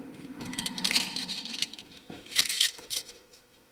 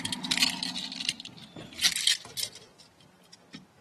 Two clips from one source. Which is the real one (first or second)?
second